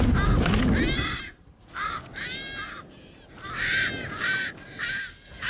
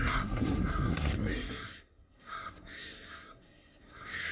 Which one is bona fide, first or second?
first